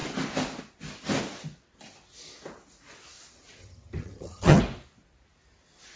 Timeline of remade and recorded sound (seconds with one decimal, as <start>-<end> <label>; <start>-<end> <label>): 0.0-3.6 recorded; 3.6-4.6 remade; 4.6-6.0 recorded